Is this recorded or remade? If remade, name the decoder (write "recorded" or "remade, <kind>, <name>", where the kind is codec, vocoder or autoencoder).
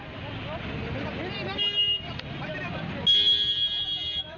recorded